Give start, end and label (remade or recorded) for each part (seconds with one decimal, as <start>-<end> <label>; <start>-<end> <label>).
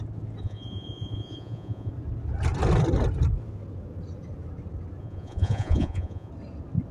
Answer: 0.0-0.4 recorded; 0.4-1.9 remade; 1.9-5.0 recorded; 5.0-6.3 remade; 6.3-6.9 recorded